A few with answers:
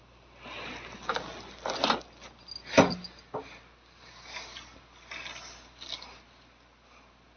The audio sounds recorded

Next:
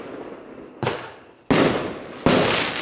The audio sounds recorded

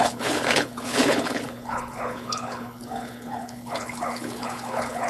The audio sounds remade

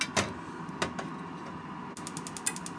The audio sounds recorded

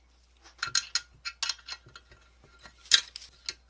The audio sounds recorded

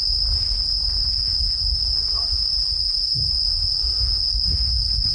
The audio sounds recorded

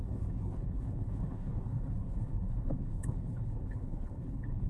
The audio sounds remade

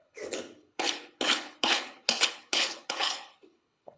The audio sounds remade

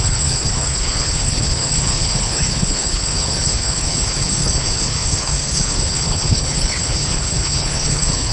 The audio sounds remade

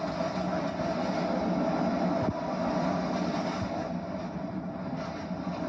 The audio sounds recorded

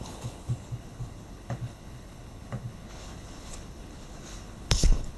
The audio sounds remade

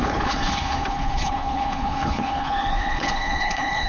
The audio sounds remade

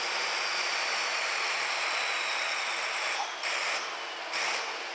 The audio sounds recorded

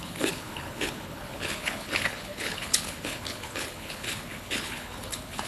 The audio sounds remade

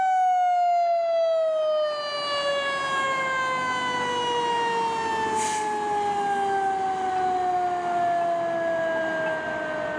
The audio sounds recorded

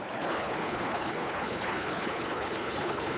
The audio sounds remade